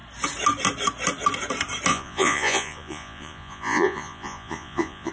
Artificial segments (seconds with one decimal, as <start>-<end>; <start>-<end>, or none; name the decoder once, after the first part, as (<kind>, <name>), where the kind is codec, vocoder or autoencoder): 1.9-5.1 (vocoder, Vocos)